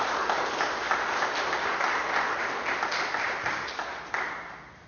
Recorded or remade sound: recorded